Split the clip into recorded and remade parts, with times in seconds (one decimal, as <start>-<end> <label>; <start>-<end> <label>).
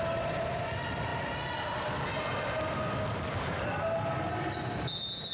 0.0-5.3 recorded